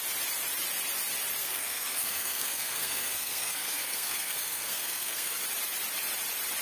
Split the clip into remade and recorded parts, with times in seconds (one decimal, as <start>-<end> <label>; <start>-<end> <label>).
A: 0.0-1.4 recorded; 1.4-5.4 remade; 5.4-6.6 recorded